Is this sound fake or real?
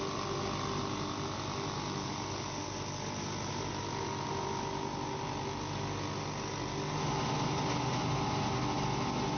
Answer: real